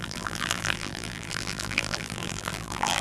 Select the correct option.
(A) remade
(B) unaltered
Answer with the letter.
A